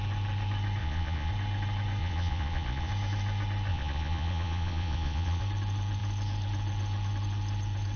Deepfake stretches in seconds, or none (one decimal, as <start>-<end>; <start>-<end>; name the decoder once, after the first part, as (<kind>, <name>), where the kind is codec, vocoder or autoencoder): 0.8-1.3 (vocoder, Vocos); 2.0-2.9; 3.7-5.4